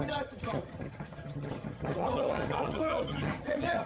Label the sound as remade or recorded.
remade